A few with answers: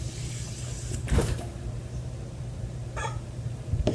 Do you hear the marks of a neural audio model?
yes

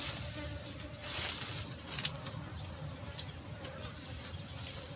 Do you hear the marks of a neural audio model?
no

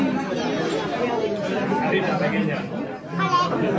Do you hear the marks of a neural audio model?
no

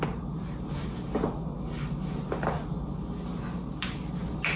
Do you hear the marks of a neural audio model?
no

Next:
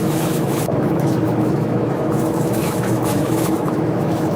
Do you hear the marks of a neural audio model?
yes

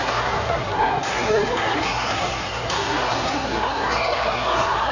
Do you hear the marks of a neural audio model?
yes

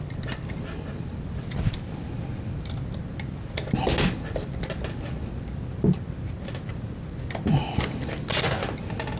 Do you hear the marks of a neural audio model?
no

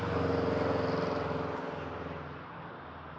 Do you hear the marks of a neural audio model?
no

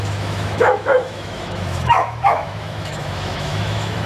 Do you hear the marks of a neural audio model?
yes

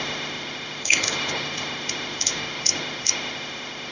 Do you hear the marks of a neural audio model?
yes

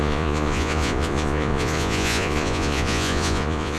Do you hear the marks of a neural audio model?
yes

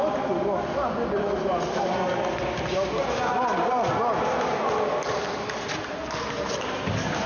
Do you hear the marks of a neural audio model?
no